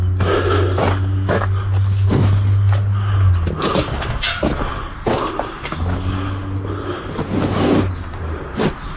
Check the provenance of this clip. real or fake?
real